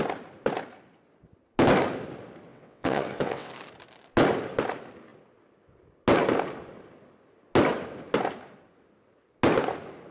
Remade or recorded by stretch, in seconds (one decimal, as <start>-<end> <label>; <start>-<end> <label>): 0.0-2.5 recorded; 2.5-3.5 remade; 3.5-10.1 recorded